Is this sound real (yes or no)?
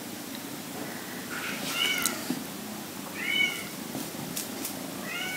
yes